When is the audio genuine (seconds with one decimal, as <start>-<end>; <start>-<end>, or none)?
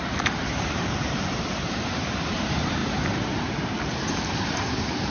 none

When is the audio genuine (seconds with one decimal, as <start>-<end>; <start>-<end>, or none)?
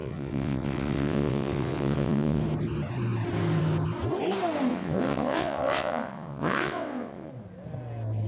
2.4-4.7; 7.3-8.3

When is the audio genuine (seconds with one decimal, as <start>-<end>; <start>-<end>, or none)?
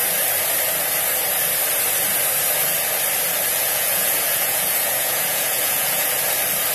0.0-3.5; 6.1-6.7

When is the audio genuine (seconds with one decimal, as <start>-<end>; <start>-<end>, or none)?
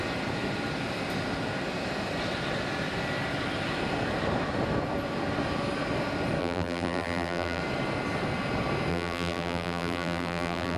0.0-6.4; 7.6-8.9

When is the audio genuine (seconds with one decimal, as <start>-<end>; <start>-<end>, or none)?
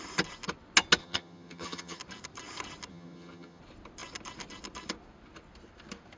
0.0-1.0; 2.0-2.9; 3.6-6.2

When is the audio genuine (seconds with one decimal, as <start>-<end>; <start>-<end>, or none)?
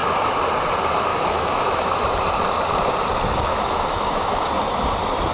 0.0-1.1; 1.9-3.5; 4.5-5.3